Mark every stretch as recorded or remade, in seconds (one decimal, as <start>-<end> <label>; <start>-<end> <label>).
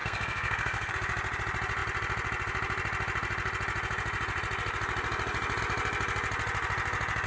0.0-0.9 remade; 0.9-7.3 recorded